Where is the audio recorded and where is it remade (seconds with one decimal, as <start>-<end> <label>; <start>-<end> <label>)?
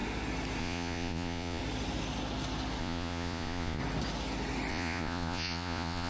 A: 0.0-0.6 recorded; 0.6-1.6 remade; 1.6-2.8 recorded; 2.8-3.8 remade; 3.8-4.7 recorded; 4.7-6.1 remade